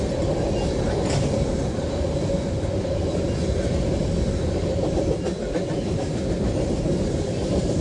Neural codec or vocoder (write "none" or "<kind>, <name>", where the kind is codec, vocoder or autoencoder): none